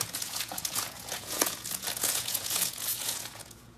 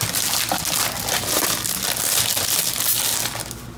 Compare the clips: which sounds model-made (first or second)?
first